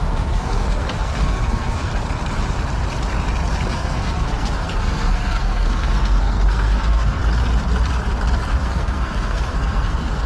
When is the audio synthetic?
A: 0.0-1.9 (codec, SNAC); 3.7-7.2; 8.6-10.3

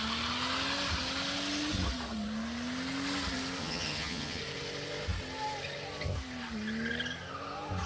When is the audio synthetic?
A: 3.6-4.4 (vocoder, HiFi-GAN)

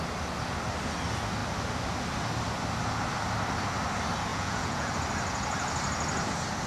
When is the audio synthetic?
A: 4.3-4.9 (vocoder, Vocos)

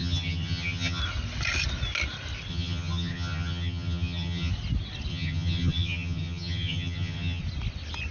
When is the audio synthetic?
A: 0.0-1.0 (vocoder, HiFi-GAN); 2.5-4.5; 5.1-7.4